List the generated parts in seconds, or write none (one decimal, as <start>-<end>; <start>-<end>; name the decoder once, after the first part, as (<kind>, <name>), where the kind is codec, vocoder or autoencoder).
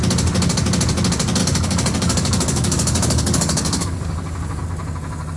1.4-4.6 (codec, DAC)